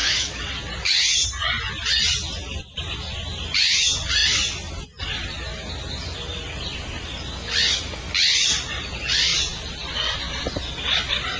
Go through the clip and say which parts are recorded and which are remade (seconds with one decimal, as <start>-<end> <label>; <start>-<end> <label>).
0.0-0.5 remade; 0.5-11.4 recorded